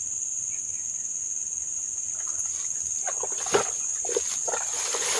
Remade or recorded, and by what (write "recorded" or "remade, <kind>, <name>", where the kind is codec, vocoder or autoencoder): recorded